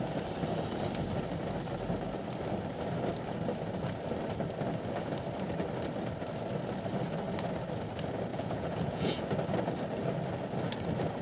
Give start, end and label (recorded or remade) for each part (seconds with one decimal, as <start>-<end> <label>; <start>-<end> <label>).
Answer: 0.0-8.3 recorded; 8.3-9.2 remade; 9.2-11.2 recorded